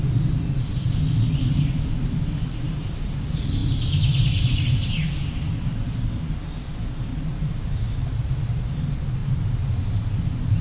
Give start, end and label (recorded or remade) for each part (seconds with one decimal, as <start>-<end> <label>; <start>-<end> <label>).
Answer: 0.0-3.6 recorded; 3.6-5.2 remade; 5.2-7.1 recorded; 7.1-8.3 remade; 8.3-9.2 recorded; 9.2-10.6 remade